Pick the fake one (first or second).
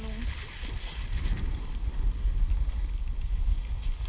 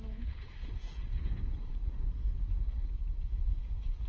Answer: second